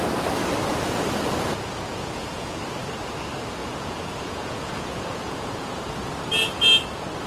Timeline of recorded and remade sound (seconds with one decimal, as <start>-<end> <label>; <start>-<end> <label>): 0.0-1.9 recorded; 1.9-2.6 remade; 2.6-3.6 recorded; 3.6-6.1 remade; 6.1-7.3 recorded